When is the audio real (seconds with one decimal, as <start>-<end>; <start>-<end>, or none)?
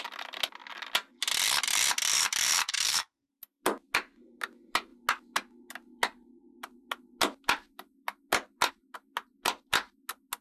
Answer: 0.0-2.6; 3.3-10.4